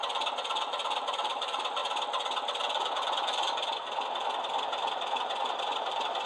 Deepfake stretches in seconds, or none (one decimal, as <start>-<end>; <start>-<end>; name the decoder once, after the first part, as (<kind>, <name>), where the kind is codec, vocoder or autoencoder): 1.1-1.8 (vocoder, BigVGAN v2); 5.6-6.3